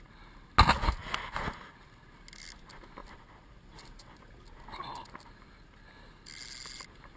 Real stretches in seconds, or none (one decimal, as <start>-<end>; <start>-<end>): 0.0-7.2